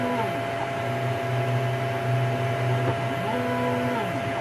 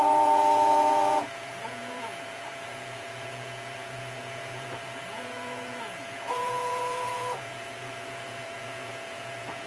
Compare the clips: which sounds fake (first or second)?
second